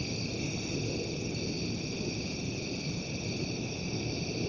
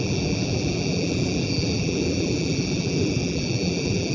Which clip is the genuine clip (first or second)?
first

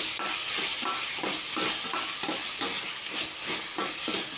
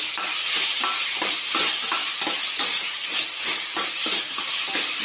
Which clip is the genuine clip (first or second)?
first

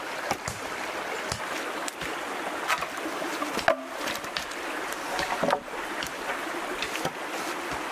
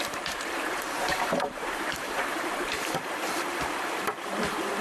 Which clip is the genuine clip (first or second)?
first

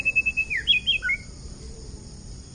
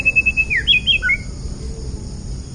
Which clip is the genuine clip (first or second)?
second